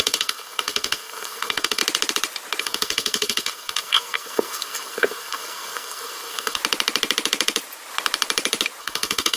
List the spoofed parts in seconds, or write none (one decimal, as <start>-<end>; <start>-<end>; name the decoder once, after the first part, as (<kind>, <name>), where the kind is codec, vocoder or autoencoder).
0.0-1.8 (codec, SNAC); 2.6-6.6; 8.8-9.4